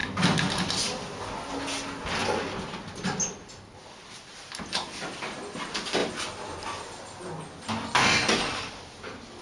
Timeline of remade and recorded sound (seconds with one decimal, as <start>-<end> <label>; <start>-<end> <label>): 0.0-9.4 recorded